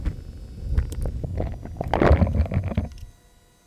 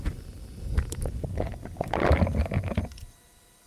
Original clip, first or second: first